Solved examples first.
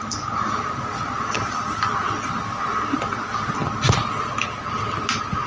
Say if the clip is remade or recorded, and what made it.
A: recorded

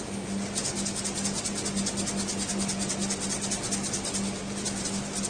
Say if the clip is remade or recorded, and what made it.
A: recorded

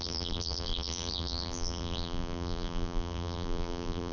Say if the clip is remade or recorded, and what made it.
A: remade, vocoder, BigVGAN v2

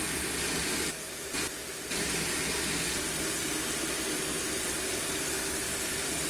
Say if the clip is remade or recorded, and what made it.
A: recorded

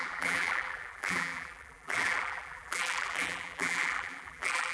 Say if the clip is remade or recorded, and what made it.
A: remade, vocoder, BigVGAN v2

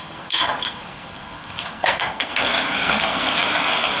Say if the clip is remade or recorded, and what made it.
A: remade, codec, SNAC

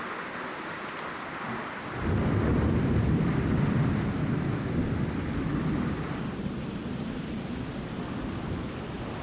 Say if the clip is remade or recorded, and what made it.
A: recorded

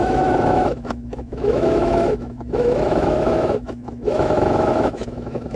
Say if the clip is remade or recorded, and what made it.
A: remade, autoencoder, DAC-VAE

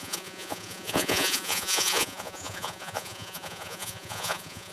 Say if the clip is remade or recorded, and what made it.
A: remade, vocoder, Vocos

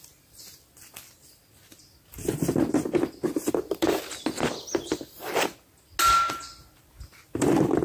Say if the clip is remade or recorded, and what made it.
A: recorded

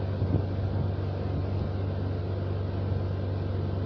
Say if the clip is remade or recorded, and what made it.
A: recorded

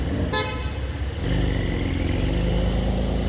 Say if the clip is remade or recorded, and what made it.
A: recorded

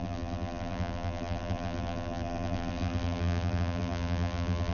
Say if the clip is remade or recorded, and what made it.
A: remade, vocoder, BigVGAN v2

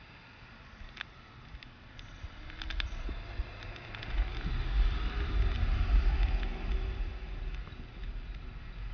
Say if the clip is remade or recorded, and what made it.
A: recorded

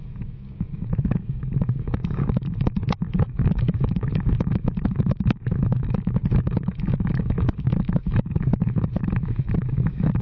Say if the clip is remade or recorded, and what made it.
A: remade, codec, DAC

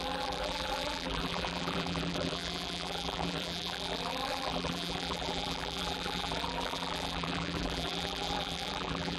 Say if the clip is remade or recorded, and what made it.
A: remade, vocoder, BigVGAN v2